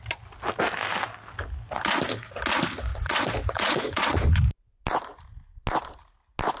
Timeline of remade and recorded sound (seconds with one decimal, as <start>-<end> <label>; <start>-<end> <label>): 0.0-2.9 recorded; 2.9-4.4 remade; 4.4-6.6 recorded